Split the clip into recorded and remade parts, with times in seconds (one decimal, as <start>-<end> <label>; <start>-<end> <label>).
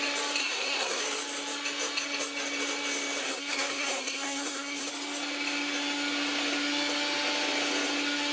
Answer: 0.0-0.4 recorded; 0.4-1.0 remade; 1.0-3.2 recorded; 3.2-4.9 remade; 4.9-8.3 recorded